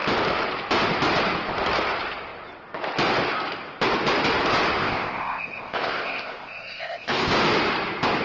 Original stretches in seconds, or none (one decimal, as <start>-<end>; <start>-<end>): 0.0-4.8; 7.3-8.2